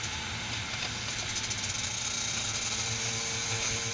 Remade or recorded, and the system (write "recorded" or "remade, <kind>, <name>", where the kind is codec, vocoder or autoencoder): recorded